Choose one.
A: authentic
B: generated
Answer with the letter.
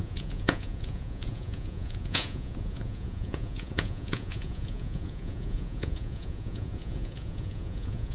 B